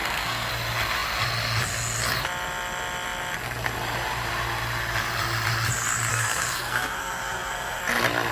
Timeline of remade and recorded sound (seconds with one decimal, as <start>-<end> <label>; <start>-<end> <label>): 0.0-0.5 remade; 0.5-6.1 recorded; 6.1-7.8 remade; 7.8-8.3 recorded